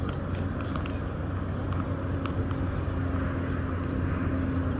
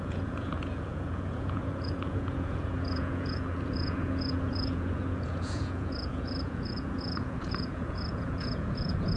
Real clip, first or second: first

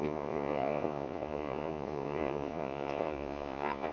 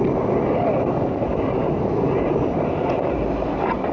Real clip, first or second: second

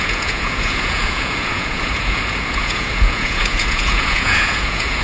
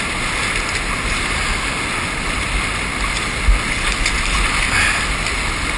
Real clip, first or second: second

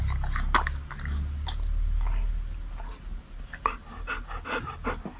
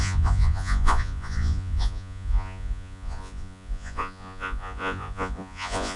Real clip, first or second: first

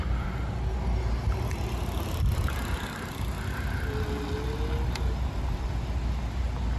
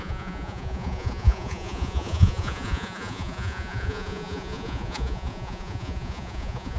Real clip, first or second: first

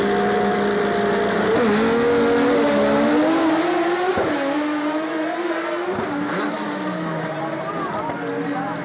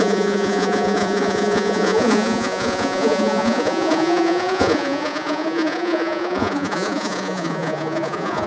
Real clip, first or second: first